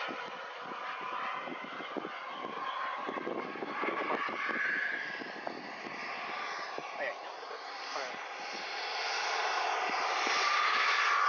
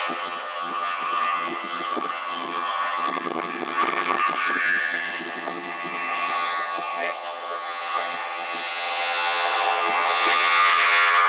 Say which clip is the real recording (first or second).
first